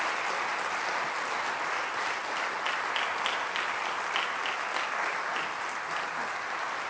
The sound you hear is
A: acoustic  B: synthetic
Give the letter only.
A